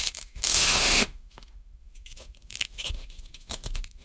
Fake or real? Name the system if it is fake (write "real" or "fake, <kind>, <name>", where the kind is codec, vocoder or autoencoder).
fake, autoencoder, DAC-VAE